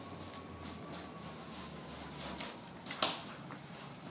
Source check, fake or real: real